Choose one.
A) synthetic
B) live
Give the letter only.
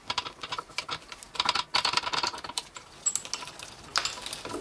B